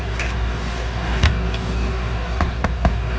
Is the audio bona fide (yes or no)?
no